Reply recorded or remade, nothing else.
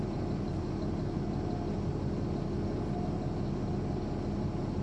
recorded